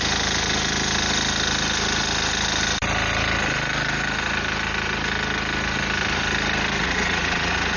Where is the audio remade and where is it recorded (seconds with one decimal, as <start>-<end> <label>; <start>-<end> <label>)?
0.0-6.8 recorded; 6.8-7.8 remade